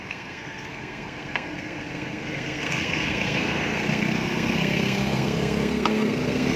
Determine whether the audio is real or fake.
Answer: fake